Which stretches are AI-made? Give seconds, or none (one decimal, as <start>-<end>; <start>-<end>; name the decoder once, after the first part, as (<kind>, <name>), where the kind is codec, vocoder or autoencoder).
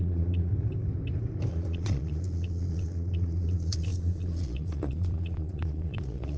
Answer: 0.0-0.5 (vocoder, Vocos); 1.5-6.4